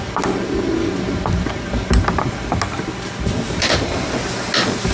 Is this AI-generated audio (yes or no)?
no